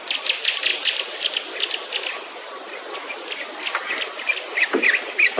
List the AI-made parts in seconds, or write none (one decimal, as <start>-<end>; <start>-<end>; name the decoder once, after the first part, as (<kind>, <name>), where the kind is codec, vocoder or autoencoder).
none